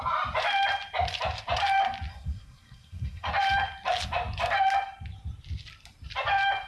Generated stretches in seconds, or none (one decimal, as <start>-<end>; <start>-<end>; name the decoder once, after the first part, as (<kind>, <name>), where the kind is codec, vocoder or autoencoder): 2.1-3.3 (codec, SNAC)